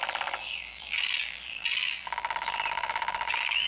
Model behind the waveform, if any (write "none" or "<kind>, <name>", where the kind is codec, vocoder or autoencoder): vocoder, BigVGAN v2